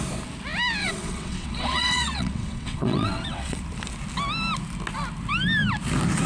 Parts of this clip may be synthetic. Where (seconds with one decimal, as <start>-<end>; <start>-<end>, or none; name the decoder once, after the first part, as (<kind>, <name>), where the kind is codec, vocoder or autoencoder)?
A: 0.8-3.6 (vocoder, WaveNeXt)